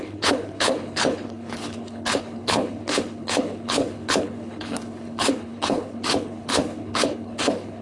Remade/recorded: remade